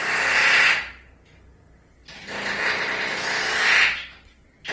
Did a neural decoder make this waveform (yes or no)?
no